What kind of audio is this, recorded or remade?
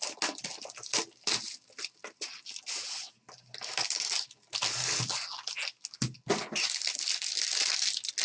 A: recorded